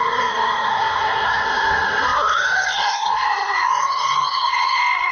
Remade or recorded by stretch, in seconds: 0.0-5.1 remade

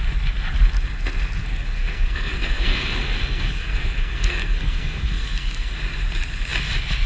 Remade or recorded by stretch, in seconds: 0.0-1.4 recorded; 1.4-5.7 remade; 5.7-7.1 recorded